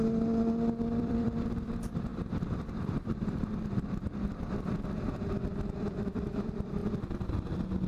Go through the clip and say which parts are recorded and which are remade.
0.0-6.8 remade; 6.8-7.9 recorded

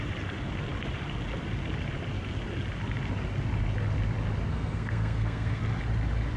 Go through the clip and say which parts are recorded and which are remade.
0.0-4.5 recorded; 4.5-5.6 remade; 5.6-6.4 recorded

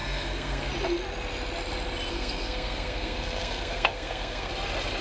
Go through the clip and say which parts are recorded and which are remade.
0.0-0.7 remade; 0.7-2.1 recorded; 2.1-4.5 remade; 4.5-5.0 recorded

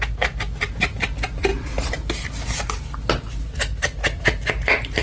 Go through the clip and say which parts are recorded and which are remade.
0.0-5.0 recorded

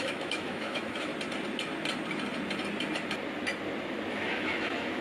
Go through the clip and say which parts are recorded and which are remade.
0.0-1.1 remade; 1.1-4.1 recorded; 4.1-5.0 remade

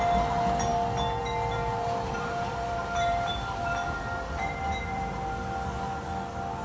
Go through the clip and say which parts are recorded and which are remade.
0.0-1.8 recorded; 1.8-5.1 remade; 5.1-6.6 recorded

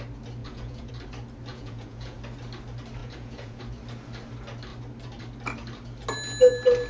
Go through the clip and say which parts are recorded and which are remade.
0.0-0.4 recorded; 0.4-0.9 remade; 0.9-1.5 recorded; 1.5-2.2 remade; 2.2-3.0 recorded; 3.0-3.6 remade; 3.6-6.9 recorded

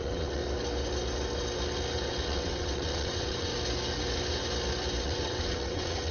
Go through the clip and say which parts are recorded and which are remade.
0.0-0.4 remade; 0.4-2.1 recorded; 2.1-3.5 remade; 3.5-5.0 recorded; 5.0-6.1 remade